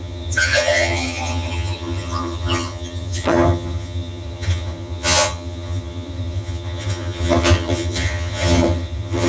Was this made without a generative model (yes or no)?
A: no